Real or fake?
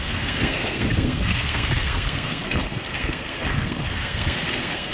fake